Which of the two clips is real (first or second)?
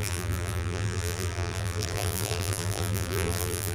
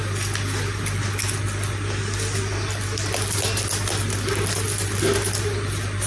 second